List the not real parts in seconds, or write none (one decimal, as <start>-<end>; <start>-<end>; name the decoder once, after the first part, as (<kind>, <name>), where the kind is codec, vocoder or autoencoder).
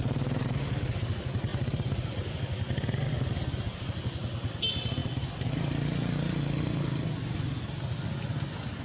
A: none